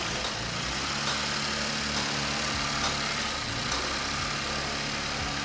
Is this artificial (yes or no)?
no